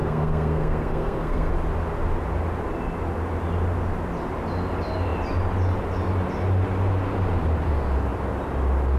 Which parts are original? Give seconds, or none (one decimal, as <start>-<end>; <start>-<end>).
1.5-9.0